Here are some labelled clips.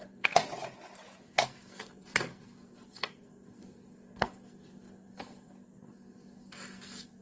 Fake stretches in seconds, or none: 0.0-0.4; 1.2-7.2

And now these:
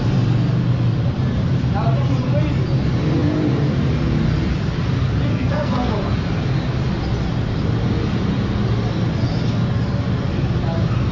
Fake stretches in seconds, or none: 5.3-5.9

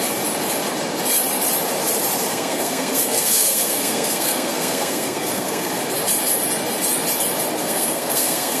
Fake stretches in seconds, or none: 2.3-5.7; 7.6-8.6

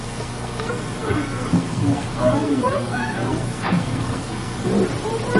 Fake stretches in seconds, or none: 0.0-4.7

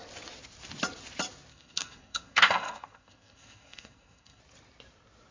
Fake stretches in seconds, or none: 1.5-4.4